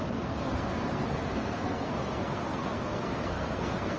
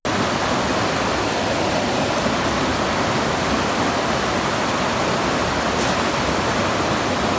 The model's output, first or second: first